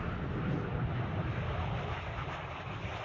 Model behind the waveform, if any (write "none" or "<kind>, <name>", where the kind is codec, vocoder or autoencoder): none